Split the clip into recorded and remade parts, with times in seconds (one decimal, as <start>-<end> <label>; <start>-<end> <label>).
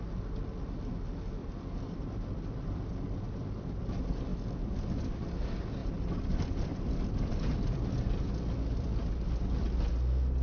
0.0-1.4 recorded; 1.4-3.8 remade; 3.8-5.8 recorded; 5.8-7.0 remade; 7.0-10.4 recorded